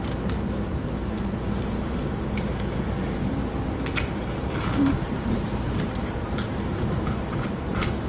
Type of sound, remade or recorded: remade